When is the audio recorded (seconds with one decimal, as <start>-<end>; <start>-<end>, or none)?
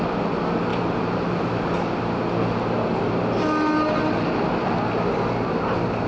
0.0-0.7; 1.4-6.1